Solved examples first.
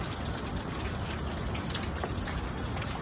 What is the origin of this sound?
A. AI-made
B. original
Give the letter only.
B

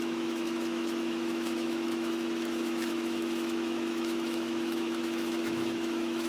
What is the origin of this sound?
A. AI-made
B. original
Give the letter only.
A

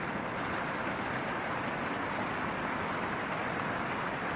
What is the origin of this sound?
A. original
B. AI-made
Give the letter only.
A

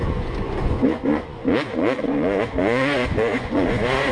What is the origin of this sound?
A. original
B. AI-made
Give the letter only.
B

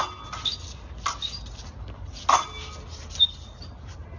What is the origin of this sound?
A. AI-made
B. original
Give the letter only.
B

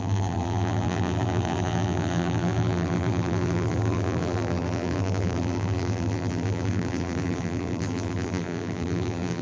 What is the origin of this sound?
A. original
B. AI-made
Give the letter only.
B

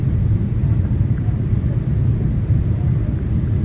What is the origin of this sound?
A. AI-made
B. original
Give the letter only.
A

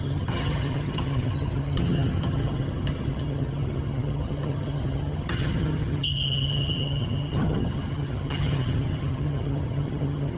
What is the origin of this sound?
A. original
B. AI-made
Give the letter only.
B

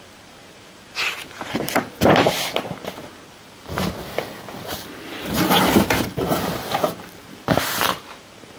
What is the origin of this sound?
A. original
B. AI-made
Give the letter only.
B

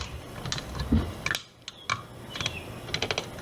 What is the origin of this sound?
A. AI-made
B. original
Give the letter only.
B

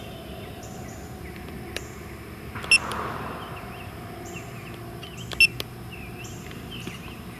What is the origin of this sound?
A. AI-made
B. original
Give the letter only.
B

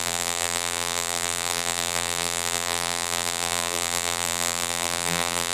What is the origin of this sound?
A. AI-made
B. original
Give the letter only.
A